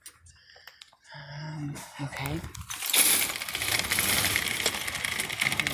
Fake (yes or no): no